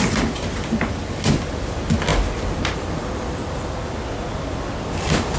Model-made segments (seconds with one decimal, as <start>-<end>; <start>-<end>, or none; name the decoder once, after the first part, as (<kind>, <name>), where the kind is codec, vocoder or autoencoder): none